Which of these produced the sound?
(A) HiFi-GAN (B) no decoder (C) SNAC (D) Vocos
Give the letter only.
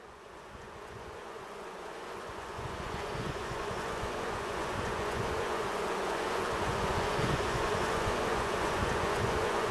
D